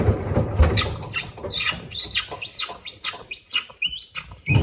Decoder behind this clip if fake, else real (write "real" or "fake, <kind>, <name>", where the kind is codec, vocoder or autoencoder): real